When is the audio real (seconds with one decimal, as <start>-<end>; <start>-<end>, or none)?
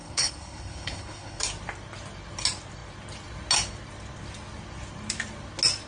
1.4-5.9